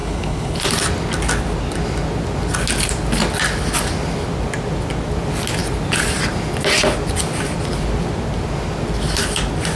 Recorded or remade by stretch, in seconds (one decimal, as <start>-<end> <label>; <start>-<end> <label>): 0.0-0.6 remade; 0.6-9.8 recorded